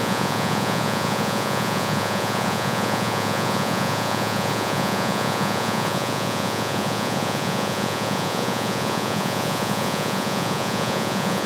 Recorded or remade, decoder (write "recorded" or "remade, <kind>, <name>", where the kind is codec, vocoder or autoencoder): remade, vocoder, Vocos